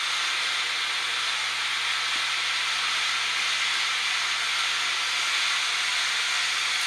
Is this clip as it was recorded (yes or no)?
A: yes